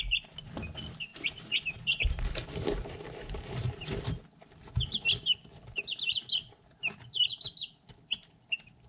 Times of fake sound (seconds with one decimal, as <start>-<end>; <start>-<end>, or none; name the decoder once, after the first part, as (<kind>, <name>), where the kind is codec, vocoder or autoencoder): 1.1-4.2 (vocoder, BigVGAN v2)